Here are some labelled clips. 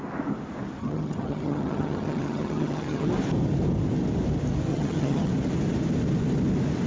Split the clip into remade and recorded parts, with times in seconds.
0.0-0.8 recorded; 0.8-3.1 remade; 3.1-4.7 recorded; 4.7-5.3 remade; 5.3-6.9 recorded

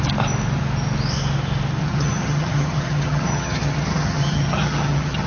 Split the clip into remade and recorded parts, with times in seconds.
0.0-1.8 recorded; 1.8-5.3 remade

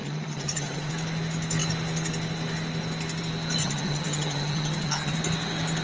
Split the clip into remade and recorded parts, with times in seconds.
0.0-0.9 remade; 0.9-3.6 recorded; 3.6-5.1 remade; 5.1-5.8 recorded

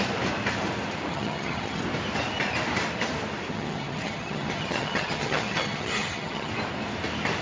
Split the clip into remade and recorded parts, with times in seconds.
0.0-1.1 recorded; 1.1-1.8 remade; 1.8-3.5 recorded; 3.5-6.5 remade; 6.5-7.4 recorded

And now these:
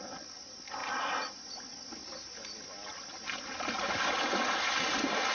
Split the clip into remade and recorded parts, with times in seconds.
0.0-5.3 recorded

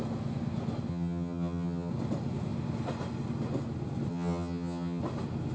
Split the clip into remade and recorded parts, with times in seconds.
0.0-0.9 recorded; 0.9-1.9 remade; 1.9-4.1 recorded; 4.1-5.0 remade; 5.0-5.5 recorded

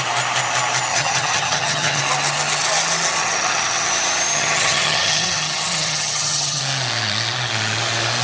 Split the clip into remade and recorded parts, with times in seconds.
0.0-0.9 recorded; 0.9-2.0 remade; 2.0-3.2 recorded; 3.2-3.9 remade; 3.9-4.3 recorded; 4.3-6.6 remade; 6.6-8.2 recorded